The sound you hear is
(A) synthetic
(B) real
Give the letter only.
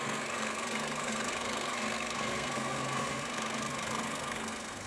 A